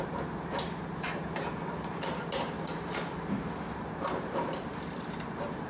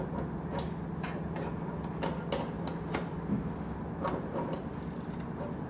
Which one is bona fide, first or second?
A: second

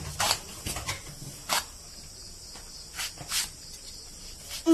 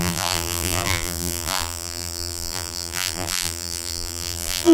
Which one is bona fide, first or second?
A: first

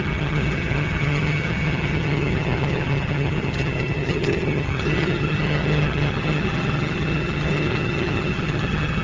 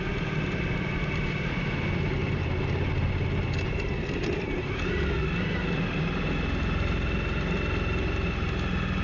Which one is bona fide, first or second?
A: second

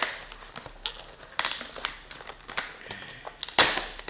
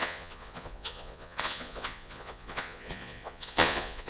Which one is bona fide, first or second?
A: first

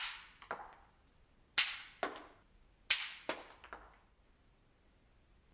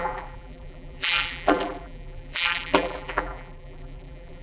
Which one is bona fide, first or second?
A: first